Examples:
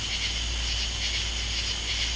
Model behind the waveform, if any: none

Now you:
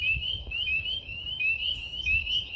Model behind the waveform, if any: codec, DAC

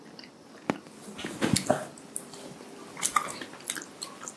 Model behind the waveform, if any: none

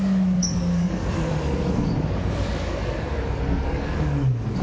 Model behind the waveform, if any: codec, DAC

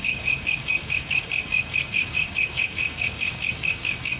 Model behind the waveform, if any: codec, DAC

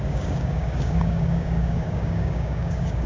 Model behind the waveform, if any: codec, DAC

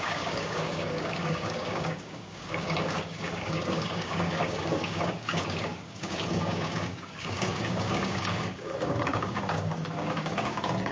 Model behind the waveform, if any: codec, DAC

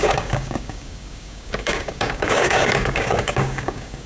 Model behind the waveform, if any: codec, DAC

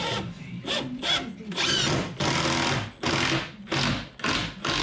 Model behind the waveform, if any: none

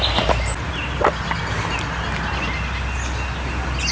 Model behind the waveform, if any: none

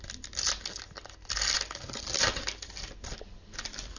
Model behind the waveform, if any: none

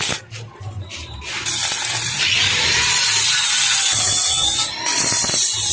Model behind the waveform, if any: none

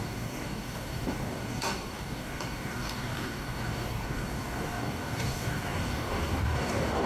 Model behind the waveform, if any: codec, DAC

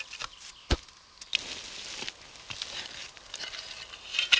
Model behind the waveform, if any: none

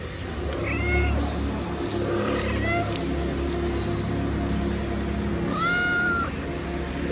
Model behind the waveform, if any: none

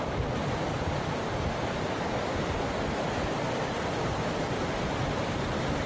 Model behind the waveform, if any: none